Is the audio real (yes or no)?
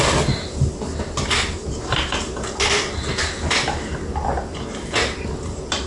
yes